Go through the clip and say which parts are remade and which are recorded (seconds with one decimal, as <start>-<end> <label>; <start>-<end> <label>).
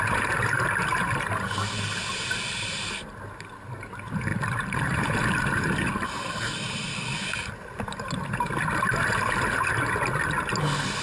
0.0-11.0 recorded